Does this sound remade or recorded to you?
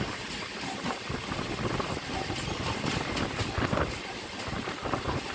recorded